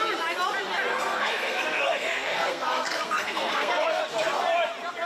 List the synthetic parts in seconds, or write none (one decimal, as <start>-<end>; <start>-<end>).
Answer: 0.9-4.0